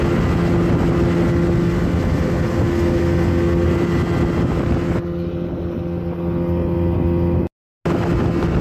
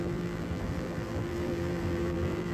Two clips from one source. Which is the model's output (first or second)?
second